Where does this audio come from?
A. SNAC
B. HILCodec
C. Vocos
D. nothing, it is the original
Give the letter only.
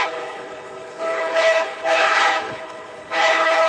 B